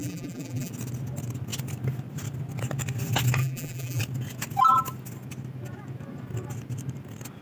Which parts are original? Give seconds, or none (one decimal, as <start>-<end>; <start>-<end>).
0.7-3.4; 4.0-7.4